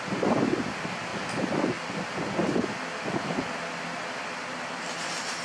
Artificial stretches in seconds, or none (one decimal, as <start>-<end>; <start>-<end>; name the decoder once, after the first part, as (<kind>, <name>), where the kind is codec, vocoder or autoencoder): 0.0-1.1 (vocoder, BigVGAN v2); 4.3-5.4